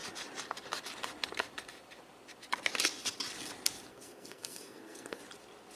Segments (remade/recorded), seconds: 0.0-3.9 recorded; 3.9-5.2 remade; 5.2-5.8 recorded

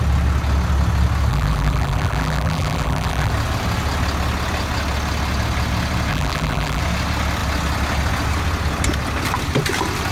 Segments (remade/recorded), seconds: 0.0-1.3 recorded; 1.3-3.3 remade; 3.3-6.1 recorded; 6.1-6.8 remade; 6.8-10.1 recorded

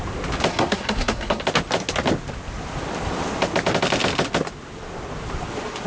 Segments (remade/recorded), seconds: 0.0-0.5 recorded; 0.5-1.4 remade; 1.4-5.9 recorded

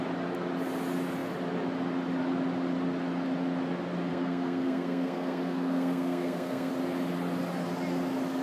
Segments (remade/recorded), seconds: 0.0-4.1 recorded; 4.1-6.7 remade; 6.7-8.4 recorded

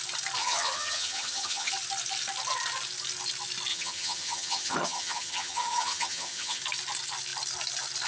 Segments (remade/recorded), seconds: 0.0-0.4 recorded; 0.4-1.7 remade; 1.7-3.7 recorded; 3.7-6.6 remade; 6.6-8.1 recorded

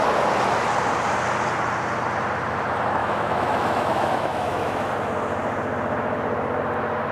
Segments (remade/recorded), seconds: 0.0-3.0 recorded; 3.0-4.9 remade; 4.9-7.1 recorded

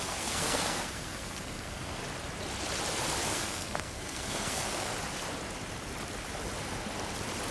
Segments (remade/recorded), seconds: 0.0-2.0 remade; 2.0-3.3 recorded; 3.3-4.9 remade; 4.9-7.5 recorded

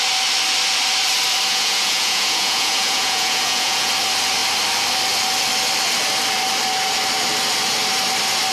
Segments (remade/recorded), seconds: 0.0-1.5 recorded; 1.5-3.9 remade; 3.9-8.5 recorded